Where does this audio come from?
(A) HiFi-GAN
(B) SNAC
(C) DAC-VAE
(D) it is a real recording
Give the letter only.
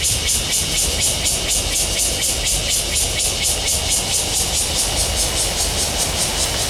D